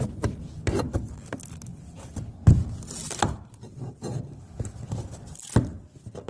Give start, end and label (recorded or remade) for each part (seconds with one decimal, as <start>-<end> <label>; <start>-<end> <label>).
0.0-1.7 recorded; 1.7-5.5 remade; 5.5-6.3 recorded